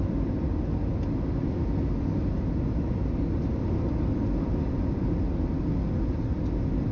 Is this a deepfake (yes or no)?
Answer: no